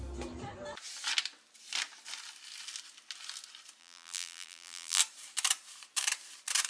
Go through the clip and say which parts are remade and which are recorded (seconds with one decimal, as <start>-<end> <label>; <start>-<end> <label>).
0.0-3.8 recorded; 3.8-5.0 remade; 5.0-6.7 recorded